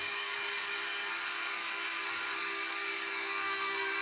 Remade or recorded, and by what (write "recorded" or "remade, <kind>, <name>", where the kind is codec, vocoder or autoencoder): remade, codec, DAC